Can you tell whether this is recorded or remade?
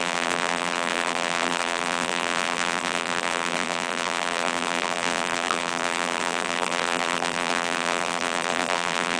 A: remade